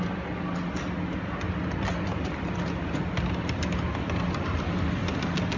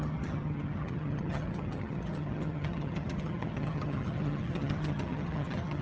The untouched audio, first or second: first